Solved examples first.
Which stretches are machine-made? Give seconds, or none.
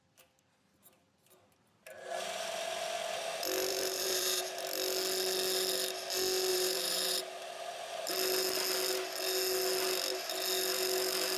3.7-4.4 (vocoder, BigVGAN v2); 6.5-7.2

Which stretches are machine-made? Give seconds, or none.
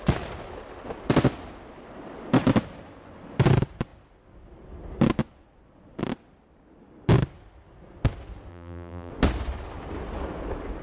8.5-9.1 (vocoder, BigVGAN v2)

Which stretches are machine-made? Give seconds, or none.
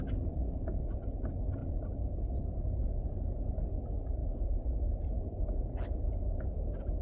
1.6-2.4 (vocoder, BigVGAN v2)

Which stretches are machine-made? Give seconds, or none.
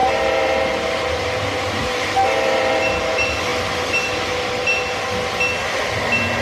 0.0-2.7 (vocoder, BigVGAN v2)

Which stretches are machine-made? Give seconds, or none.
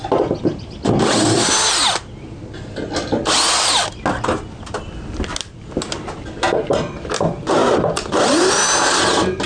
7.6-8.5 (vocoder, BigVGAN v2)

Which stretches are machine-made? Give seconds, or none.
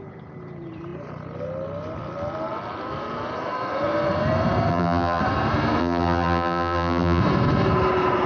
4.7-5.2 (vocoder, BigVGAN v2); 5.8-7.2